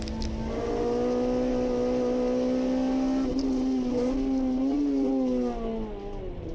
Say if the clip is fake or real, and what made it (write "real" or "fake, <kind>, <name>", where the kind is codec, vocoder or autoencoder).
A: real